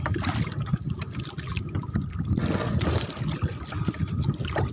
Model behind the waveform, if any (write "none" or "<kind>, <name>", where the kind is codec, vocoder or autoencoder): none